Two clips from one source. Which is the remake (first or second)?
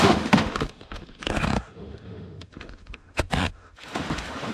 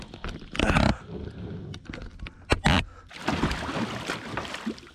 first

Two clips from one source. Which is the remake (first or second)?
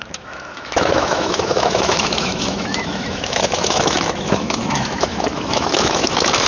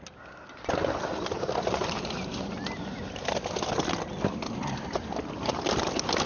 first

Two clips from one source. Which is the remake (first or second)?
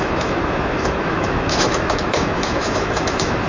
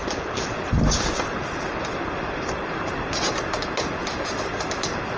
first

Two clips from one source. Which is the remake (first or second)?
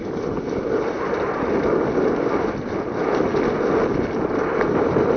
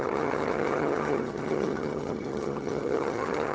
second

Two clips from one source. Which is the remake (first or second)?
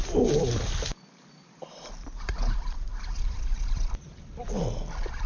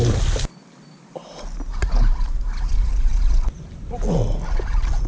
first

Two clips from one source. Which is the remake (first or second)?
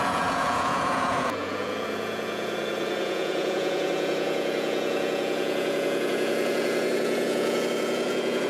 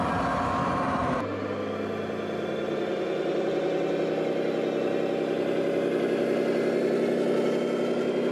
first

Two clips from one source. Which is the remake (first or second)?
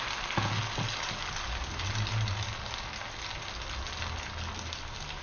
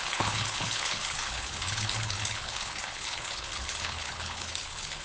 second